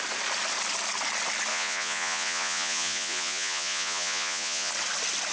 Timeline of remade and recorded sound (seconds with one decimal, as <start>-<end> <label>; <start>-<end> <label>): 0.0-1.5 recorded; 1.5-4.7 remade; 4.7-5.3 recorded